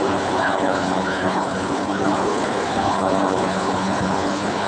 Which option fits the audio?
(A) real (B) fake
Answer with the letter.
B